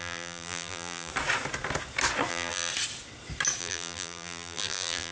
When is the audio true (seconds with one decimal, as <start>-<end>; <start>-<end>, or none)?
1.1-2.3; 2.7-3.6